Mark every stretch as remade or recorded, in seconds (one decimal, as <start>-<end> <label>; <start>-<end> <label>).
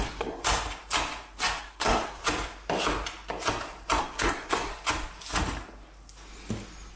0.0-0.4 remade; 0.4-1.6 recorded; 1.6-2.2 remade; 2.2-4.0 recorded; 4.0-4.7 remade; 4.7-7.0 recorded